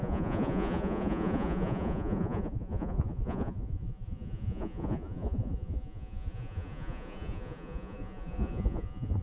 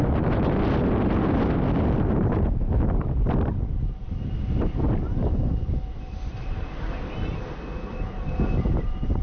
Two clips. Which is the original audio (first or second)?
second